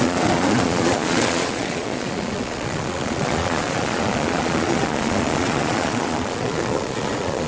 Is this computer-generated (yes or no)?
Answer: yes